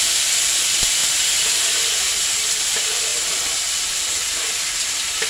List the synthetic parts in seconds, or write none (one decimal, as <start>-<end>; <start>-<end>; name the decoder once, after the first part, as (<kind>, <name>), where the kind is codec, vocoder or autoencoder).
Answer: 0.0-1.0 (vocoder, BigVGAN v2); 2.6-5.3